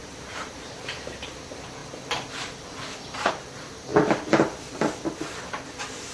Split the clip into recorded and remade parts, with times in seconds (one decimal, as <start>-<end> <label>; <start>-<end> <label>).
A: 0.0-0.8 remade; 0.8-6.1 recorded